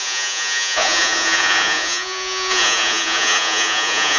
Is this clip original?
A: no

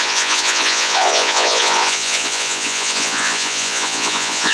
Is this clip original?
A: no